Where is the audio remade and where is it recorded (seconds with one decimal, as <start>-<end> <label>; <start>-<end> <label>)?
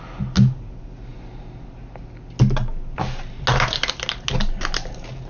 0.0-5.3 recorded